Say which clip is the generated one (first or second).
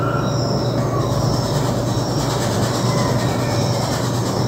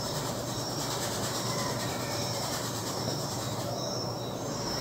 second